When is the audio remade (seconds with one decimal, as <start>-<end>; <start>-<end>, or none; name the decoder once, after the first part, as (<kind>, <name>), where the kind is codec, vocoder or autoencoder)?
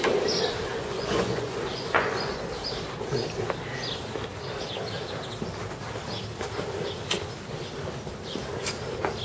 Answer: 0.7-2.4 (vocoder, Vocos)